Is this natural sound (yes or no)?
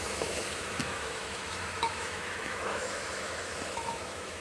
no